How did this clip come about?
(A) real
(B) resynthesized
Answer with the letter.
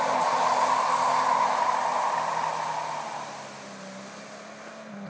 A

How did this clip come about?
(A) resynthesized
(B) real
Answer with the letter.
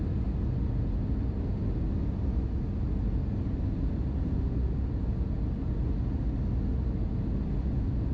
B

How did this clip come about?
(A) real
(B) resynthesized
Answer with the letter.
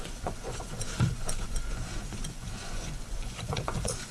B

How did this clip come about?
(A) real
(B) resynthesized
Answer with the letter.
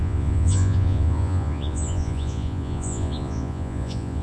B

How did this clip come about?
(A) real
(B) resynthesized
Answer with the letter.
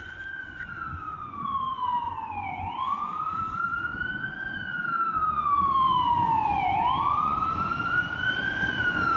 B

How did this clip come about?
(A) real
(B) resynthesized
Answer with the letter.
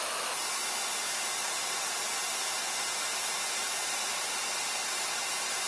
A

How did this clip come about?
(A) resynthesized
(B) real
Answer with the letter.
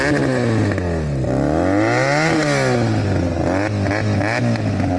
B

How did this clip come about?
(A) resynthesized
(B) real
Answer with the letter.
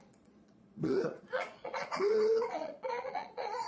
A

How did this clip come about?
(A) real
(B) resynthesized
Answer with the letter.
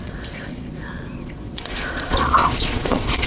B